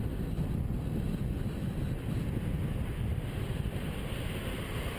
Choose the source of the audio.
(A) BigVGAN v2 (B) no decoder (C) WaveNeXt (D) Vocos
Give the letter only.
B